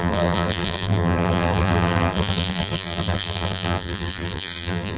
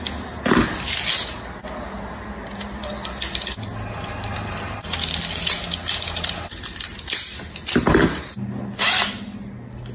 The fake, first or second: first